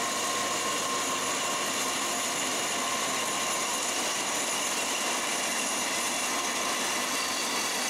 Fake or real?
real